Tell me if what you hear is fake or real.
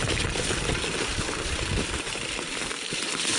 real